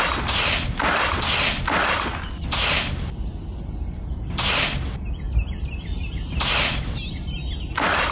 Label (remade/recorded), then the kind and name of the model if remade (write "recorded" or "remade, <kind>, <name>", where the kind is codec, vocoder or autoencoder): recorded